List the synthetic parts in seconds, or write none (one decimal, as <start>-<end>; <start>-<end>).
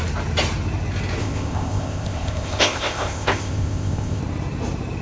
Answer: 1.2-4.2